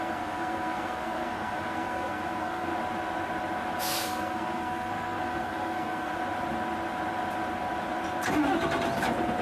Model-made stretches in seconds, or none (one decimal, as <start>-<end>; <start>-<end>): 0.0-2.7; 3.8-6.1